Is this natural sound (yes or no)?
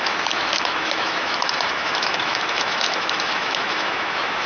no